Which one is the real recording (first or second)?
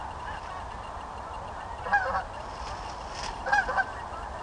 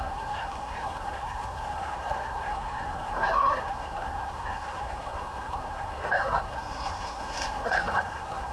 first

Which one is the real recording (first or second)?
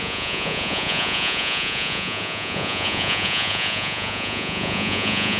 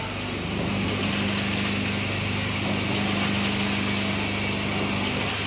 second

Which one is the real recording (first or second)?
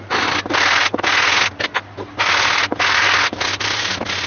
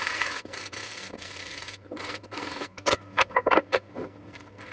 first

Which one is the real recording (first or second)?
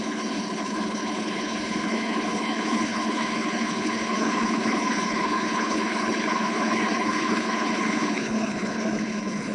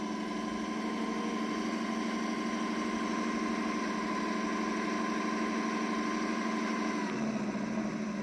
second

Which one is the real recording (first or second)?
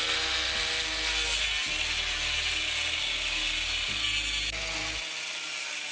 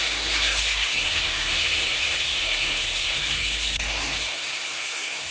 first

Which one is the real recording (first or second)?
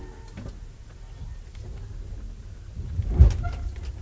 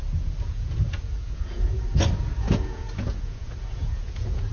first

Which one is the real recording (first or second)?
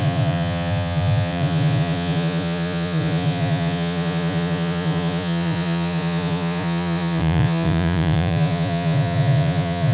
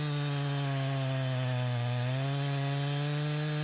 second